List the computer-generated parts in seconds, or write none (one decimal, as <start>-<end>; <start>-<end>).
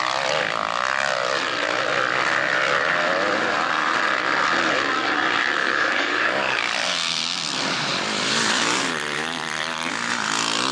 5.6-6.6